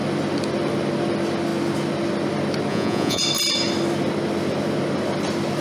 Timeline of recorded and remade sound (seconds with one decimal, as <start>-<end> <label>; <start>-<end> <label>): 0.0-2.7 recorded; 2.7-3.2 remade; 3.2-5.6 recorded